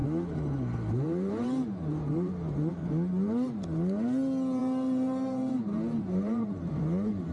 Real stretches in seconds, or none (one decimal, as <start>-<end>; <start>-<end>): 2.7-4.6; 6.8-7.3